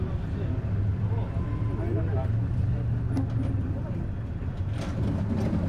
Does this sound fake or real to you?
real